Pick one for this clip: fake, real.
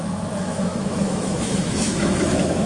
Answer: fake